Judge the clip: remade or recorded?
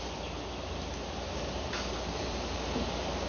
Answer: recorded